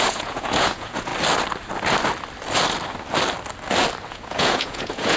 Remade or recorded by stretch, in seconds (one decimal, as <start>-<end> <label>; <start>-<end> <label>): 0.0-1.1 remade; 1.1-4.1 recorded; 4.1-5.2 remade